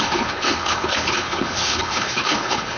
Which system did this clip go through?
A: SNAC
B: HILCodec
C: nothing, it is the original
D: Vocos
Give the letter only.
B